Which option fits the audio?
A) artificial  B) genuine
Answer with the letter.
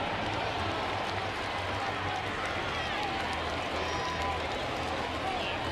B